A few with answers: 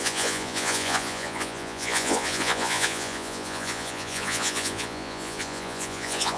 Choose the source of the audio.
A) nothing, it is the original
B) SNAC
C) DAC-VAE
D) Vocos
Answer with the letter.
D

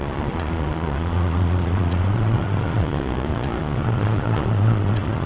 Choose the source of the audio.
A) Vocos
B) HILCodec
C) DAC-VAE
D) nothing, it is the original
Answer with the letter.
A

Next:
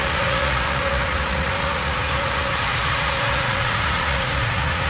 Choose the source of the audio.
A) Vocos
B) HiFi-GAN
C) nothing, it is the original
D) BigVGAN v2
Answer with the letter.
A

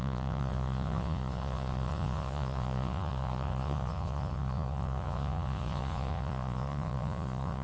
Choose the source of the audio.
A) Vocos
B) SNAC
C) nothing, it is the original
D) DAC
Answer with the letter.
A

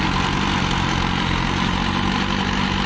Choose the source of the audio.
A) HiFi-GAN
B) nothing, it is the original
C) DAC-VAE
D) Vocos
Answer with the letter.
B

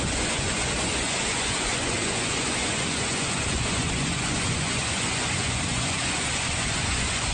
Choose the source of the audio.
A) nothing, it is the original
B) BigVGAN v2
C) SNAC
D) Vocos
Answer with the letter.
D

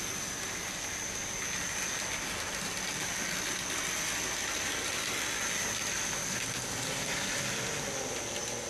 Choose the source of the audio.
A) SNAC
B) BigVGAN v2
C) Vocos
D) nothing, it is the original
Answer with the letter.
D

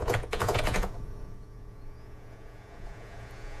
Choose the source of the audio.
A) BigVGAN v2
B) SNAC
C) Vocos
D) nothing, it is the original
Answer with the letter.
C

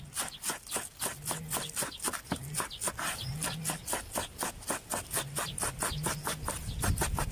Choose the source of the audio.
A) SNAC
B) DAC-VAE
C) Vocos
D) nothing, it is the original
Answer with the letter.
D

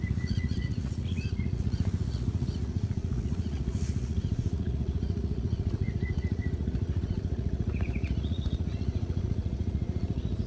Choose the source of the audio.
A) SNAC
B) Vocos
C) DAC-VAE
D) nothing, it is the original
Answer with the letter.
B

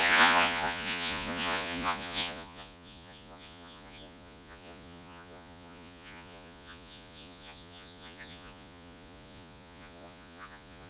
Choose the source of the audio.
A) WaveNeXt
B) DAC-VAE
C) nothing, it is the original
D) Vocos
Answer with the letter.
D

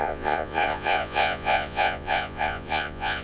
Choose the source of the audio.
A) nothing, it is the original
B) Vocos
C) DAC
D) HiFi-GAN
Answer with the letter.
B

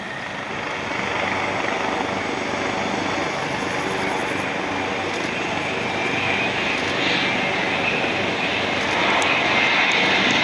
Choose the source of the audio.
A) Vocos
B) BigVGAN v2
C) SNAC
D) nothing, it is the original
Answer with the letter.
D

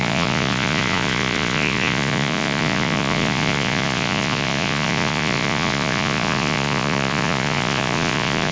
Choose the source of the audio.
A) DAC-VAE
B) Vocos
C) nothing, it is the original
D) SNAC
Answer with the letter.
B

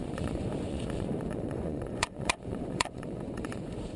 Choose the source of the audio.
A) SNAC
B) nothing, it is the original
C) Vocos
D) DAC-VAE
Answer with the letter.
C